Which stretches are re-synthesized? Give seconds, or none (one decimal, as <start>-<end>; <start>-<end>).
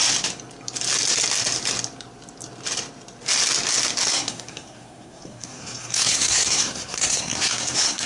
4.1-8.1